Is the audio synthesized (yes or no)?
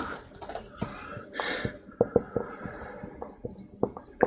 no